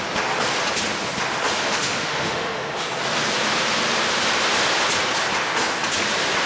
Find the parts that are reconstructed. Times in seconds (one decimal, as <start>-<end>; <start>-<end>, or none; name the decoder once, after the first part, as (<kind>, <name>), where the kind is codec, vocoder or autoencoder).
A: 1.7-2.8 (autoencoder, DAC-VAE)